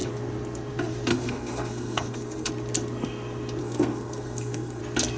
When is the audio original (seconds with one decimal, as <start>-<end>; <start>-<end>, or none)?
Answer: 0.0-1.1; 2.5-3.6; 4.8-5.2